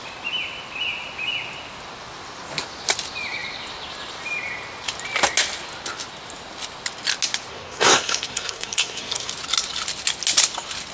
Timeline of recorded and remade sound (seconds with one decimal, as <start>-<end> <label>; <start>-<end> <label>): 0.0-7.5 recorded; 7.5-9.3 remade; 9.3-10.9 recorded